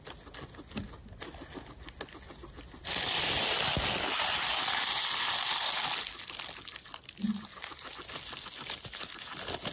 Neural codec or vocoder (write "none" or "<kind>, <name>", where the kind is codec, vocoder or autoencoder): none